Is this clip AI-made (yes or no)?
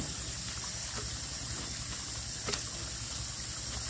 no